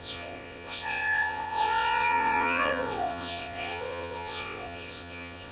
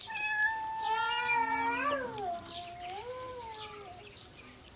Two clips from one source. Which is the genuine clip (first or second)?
second